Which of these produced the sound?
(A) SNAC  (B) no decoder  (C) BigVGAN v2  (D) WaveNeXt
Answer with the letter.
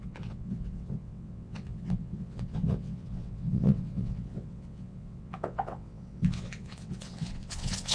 D